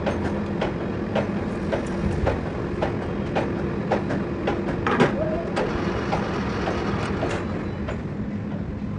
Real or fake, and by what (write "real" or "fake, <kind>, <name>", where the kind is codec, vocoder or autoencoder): real